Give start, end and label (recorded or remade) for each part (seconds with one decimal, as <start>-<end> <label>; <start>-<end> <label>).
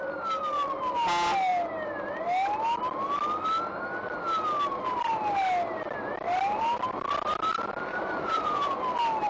0.0-7.9 recorded; 7.9-8.7 remade; 8.7-9.3 recorded